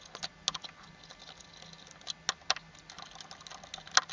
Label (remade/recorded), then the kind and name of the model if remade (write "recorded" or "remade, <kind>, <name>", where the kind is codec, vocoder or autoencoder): recorded